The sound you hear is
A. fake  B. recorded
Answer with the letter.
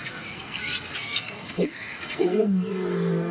A